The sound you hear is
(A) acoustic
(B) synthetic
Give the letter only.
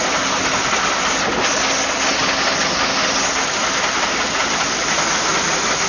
A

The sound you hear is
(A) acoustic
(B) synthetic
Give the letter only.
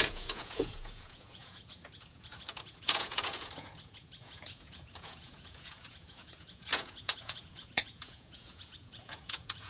B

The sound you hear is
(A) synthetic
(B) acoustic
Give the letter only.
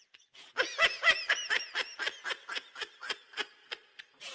B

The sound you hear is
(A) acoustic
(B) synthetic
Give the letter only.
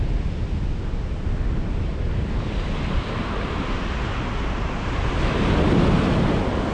A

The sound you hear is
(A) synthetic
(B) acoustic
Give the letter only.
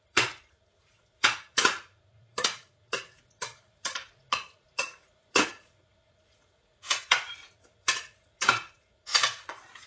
A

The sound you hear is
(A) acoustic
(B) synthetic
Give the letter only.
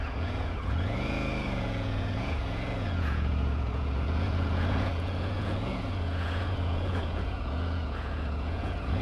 B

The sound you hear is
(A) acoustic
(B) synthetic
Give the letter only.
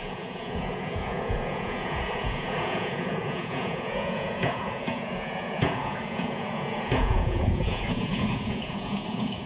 B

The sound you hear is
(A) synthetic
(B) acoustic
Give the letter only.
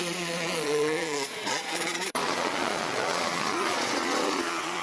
A